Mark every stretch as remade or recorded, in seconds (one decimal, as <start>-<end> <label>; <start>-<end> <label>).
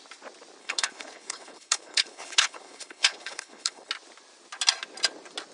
0.0-0.6 recorded; 0.6-3.9 remade; 3.9-5.5 recorded